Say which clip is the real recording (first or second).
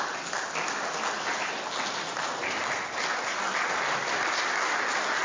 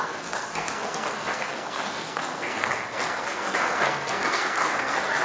first